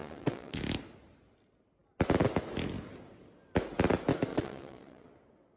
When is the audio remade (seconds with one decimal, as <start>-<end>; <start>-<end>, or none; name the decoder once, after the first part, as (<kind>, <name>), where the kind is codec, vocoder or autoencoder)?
0.0-0.6 (vocoder, WaveNeXt); 4.3-5.6